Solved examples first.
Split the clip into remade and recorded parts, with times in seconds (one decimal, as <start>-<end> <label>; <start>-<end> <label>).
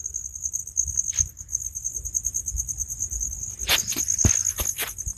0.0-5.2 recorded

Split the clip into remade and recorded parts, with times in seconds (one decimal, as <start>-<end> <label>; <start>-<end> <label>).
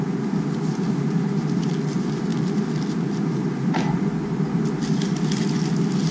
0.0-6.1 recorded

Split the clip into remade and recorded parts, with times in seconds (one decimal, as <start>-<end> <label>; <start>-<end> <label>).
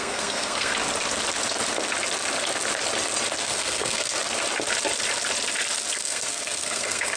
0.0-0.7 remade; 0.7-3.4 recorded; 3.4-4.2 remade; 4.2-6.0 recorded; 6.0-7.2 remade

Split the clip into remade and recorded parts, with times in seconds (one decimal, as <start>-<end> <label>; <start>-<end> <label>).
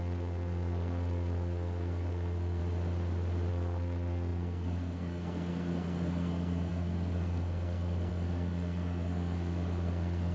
0.0-2.6 remade; 2.6-3.5 recorded; 3.5-10.3 remade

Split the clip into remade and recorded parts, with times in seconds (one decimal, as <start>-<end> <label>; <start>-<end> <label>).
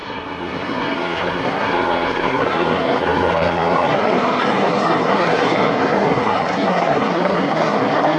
0.0-8.2 remade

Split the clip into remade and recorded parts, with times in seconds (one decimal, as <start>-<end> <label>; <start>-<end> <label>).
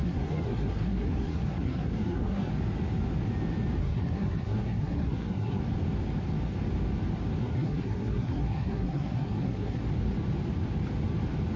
0.0-2.5 remade; 2.5-3.8 recorded; 3.8-5.6 remade; 5.6-7.4 recorded; 7.4-9.8 remade; 9.8-11.6 recorded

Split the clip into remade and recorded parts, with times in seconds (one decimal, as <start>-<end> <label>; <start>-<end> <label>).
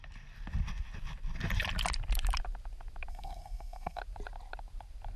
0.0-3.1 recorded; 3.1-4.0 remade; 4.0-5.2 recorded